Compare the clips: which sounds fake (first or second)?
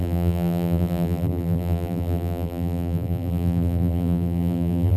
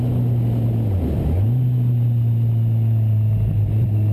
first